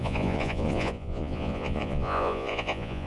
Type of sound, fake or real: fake